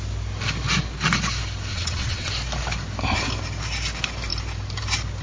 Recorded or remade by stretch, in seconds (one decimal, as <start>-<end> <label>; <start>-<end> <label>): 0.0-1.7 recorded; 1.7-2.3 remade; 2.3-5.2 recorded

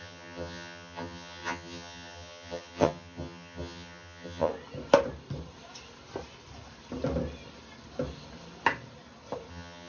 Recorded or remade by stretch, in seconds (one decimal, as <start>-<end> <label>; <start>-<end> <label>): 0.0-4.5 remade; 4.5-9.5 recorded; 9.5-9.9 remade

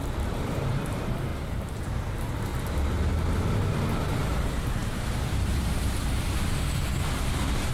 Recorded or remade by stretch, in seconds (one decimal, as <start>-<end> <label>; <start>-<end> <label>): 0.0-2.5 remade; 2.5-3.7 recorded; 3.7-7.7 remade

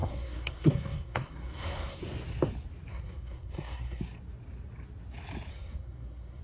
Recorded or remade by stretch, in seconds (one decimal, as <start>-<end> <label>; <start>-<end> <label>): 0.0-2.0 remade; 2.0-2.9 recorded; 2.9-4.0 remade; 4.0-5.5 recorded; 5.5-6.4 remade

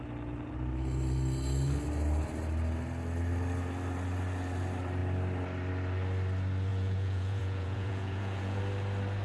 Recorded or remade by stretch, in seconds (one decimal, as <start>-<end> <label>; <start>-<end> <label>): 0.0-6.7 recorded; 6.7-8.6 remade; 8.6-9.2 recorded